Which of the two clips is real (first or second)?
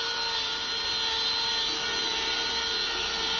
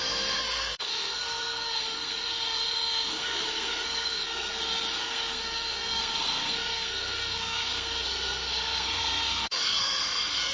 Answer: first